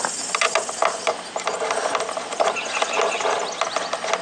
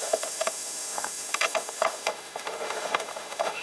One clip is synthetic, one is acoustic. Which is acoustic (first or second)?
first